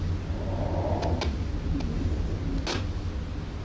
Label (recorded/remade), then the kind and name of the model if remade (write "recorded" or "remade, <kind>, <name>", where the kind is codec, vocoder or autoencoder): recorded